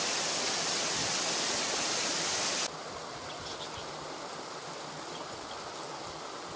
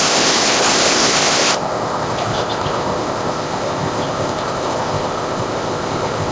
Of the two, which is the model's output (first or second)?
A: second